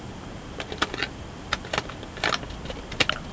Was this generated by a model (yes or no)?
no